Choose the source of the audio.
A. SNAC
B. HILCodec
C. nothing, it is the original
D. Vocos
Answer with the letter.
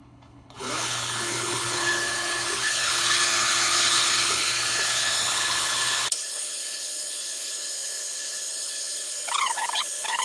B